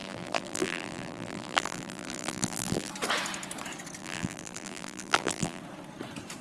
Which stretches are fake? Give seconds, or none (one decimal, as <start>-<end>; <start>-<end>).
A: 0.0-2.9; 4.0-5.6